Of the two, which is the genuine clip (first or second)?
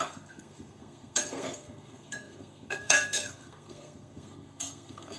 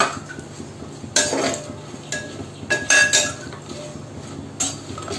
second